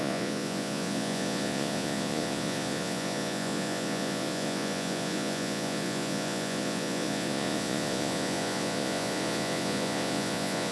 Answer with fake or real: fake